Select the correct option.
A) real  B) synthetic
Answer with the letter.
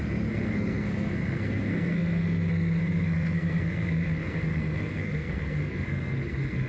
B